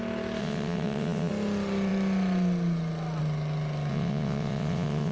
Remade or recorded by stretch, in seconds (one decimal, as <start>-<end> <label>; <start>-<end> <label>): 0.0-0.4 recorded; 0.4-1.3 remade; 1.3-3.9 recorded; 3.9-5.1 remade